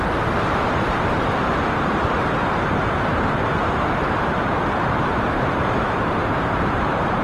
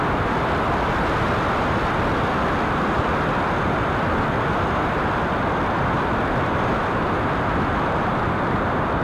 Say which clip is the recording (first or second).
second